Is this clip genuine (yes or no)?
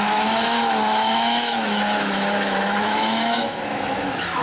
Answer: no